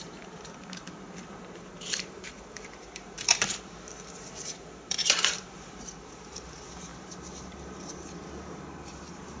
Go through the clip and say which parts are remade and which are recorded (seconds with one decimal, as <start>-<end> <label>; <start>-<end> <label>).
0.0-9.4 remade